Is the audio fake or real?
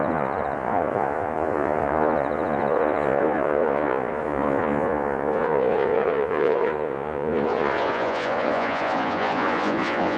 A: fake